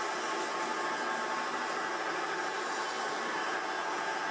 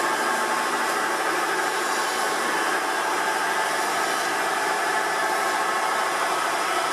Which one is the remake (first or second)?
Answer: second